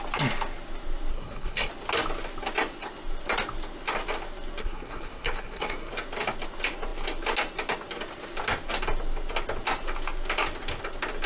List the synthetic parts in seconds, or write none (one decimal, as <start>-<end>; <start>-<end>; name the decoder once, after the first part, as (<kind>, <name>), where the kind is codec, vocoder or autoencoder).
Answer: 1.1-1.7 (codec, SNAC); 4.6-5.9